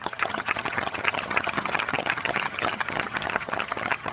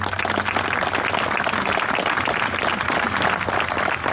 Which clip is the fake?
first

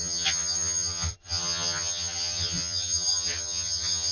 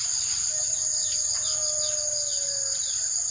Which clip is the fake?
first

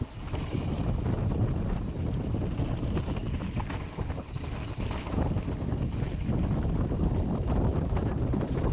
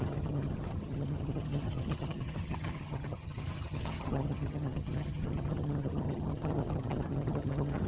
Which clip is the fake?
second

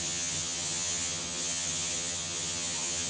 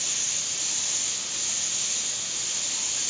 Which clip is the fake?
first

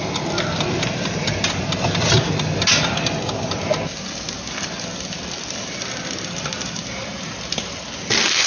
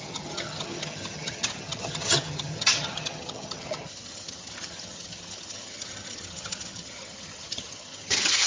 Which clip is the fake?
second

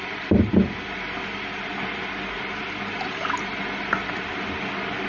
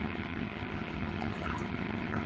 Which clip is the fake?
second